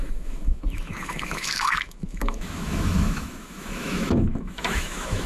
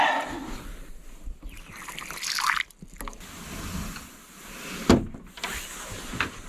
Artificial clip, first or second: first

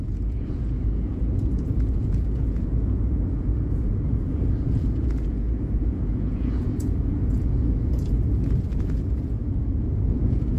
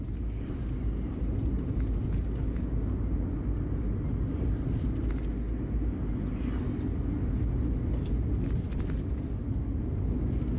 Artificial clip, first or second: first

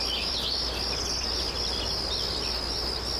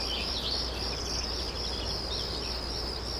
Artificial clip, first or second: second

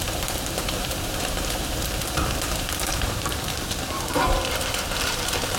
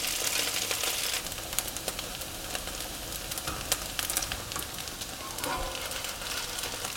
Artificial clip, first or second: first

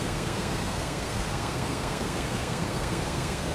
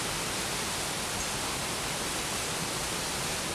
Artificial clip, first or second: first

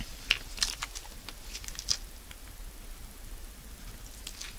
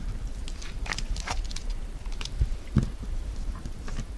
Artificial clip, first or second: second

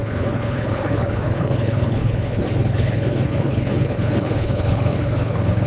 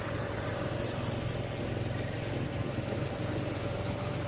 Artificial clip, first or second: first